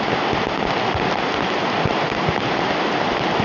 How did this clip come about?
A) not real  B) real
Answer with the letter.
B